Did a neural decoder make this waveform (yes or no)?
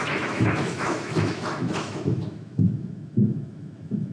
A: yes